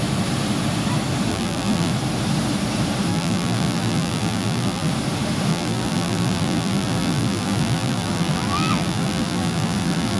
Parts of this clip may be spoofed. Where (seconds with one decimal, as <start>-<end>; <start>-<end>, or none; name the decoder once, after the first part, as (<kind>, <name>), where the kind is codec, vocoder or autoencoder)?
1.3-1.9 (vocoder, BigVGAN v2); 3.1-4.9; 5.5-10.2